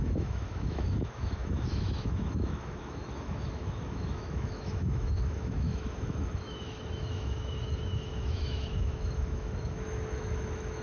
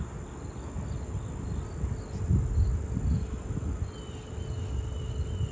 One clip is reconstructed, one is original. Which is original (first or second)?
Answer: second